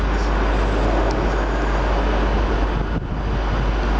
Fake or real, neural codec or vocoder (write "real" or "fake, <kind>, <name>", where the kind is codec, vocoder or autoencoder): real